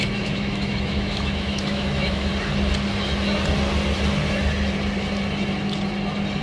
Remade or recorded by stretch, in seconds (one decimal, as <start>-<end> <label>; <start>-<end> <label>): 0.0-2.3 remade; 2.3-6.4 recorded